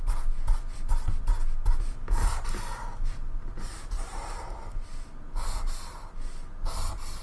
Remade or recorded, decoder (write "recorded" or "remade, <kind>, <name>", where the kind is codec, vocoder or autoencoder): recorded